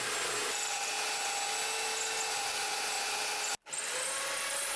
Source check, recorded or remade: recorded